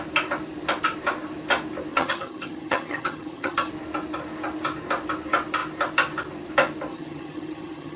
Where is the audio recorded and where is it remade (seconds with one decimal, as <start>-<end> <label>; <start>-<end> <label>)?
0.0-1.9 recorded; 1.9-3.7 remade; 3.7-6.9 recorded; 6.9-8.0 remade